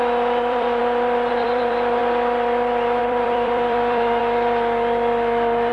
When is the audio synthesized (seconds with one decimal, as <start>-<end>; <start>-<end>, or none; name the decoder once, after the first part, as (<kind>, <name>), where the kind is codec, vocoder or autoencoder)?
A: 0.0-0.8 (vocoder, BigVGAN v2); 1.3-2.0; 3.0-4.2